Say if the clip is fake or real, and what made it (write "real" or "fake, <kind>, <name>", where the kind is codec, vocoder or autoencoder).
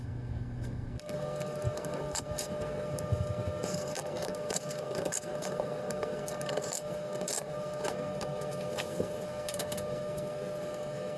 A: fake, codec, SNAC